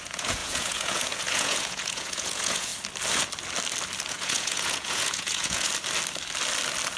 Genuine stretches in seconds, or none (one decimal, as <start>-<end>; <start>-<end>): 2.7-4.1; 5.7-7.0